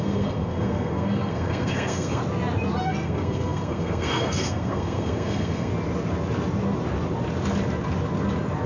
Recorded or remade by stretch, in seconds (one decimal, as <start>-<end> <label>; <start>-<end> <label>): 0.0-2.2 remade; 2.2-2.8 recorded; 2.8-5.7 remade; 5.7-8.7 recorded